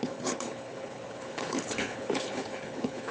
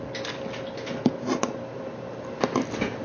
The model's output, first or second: first